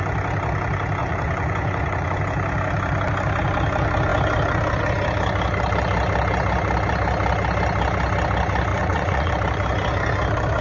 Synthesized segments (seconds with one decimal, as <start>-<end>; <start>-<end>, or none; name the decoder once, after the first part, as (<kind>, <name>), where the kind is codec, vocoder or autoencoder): 1.0-2.2 (vocoder, Vocos); 8.7-9.3